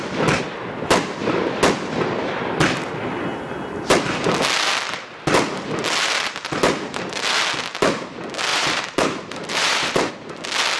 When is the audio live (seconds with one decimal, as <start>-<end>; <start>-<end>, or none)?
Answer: 0.0-8.5; 10.1-10.8